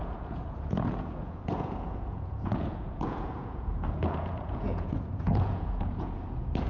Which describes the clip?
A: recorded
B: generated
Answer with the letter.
B